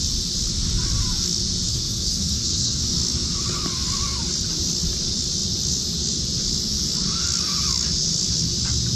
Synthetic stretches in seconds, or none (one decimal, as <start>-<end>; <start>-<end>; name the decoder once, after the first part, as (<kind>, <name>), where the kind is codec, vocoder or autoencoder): 1.7-2.8 (codec, SNAC)